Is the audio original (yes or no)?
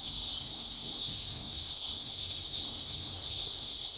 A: no